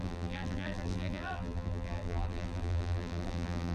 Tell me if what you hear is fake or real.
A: fake